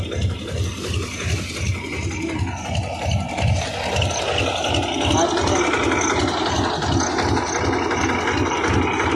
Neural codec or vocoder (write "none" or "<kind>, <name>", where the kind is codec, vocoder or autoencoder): none